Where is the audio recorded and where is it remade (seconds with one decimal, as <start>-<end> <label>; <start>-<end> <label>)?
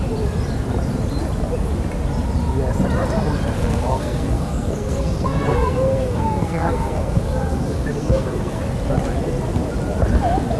0.0-3.6 recorded; 3.6-8.6 remade; 8.6-10.6 recorded